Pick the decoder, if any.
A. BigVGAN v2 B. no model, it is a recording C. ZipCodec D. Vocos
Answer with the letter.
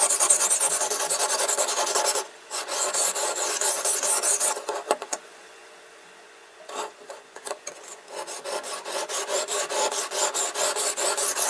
D